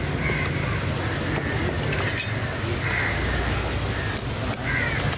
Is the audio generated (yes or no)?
no